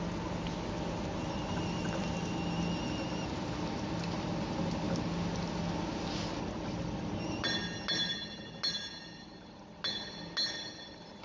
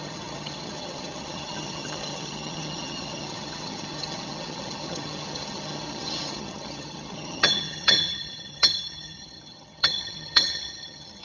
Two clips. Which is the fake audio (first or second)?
second